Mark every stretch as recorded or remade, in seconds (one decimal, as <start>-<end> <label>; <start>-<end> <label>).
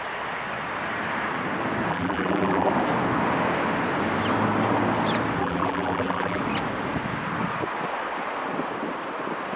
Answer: 0.0-1.9 recorded; 1.9-2.7 remade; 2.7-5.4 recorded; 5.4-6.4 remade; 6.4-9.6 recorded